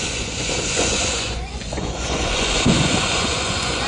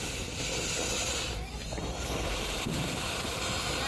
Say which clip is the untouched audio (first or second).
second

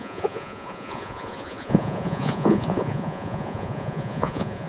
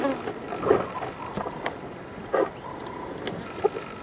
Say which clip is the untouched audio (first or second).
second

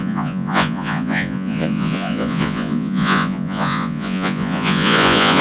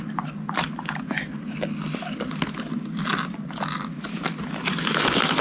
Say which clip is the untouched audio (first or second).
second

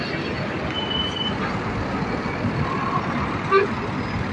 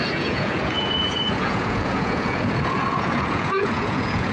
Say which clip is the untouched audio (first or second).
first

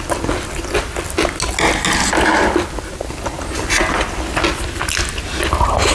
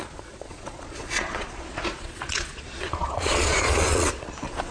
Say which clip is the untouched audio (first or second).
first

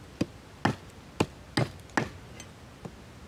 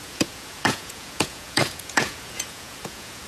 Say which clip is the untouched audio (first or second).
first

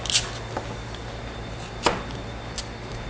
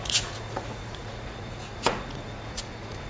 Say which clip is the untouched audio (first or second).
first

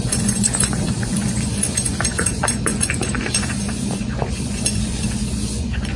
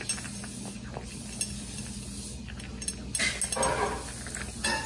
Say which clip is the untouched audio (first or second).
second